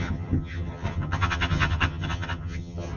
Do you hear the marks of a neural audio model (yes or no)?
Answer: yes